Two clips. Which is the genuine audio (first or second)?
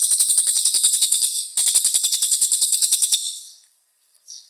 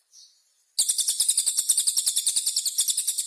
second